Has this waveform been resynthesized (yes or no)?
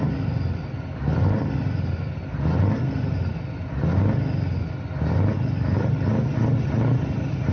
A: no